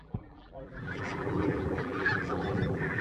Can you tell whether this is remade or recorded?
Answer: remade